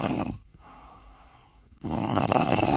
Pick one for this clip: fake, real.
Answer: fake